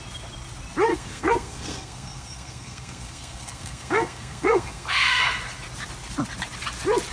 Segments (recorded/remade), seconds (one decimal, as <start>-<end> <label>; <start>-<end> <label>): 0.0-0.9 recorded; 0.9-5.2 remade; 5.2-7.1 recorded